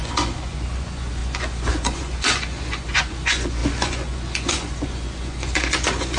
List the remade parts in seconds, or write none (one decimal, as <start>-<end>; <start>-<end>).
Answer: 0.0-6.2